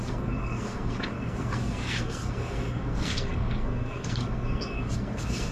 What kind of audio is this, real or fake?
fake